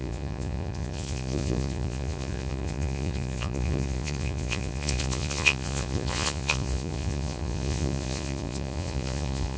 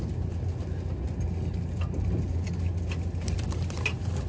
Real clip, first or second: second